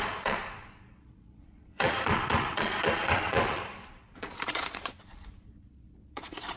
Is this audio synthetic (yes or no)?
yes